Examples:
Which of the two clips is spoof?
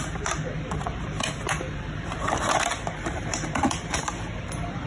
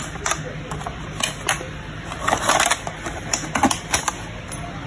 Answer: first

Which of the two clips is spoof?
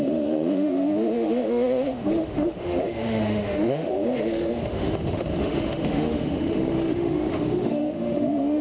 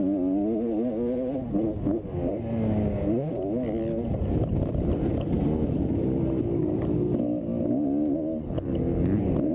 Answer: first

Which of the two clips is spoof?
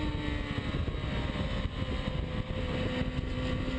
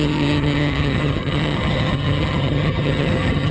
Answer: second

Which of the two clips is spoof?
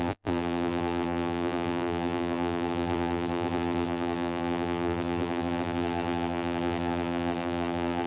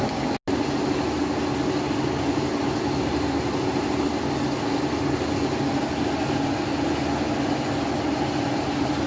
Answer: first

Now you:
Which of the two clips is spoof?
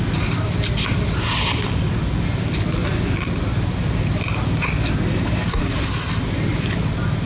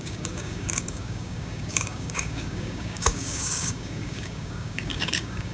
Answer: second